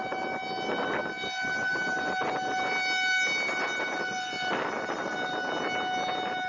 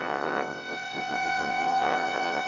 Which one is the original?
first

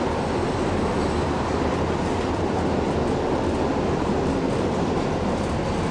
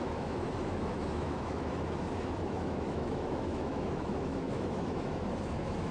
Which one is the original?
first